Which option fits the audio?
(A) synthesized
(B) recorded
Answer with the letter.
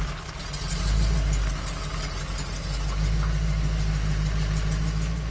B